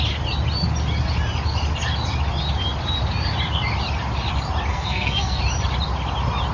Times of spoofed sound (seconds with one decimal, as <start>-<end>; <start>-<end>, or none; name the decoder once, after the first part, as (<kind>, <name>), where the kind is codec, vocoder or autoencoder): 4.7-5.4 (codec, SNAC)